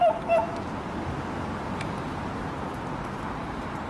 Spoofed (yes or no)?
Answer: no